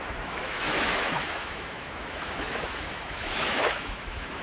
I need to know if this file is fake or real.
fake